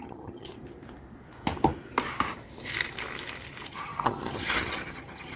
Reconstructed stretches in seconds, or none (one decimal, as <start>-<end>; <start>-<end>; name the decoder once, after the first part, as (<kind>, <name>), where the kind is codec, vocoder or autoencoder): 0.0-0.5 (vocoder, HiFi-GAN); 3.7-5.4